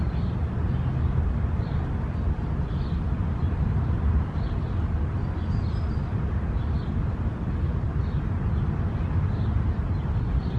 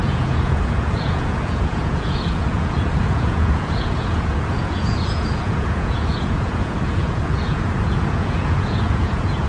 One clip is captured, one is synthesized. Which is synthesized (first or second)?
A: second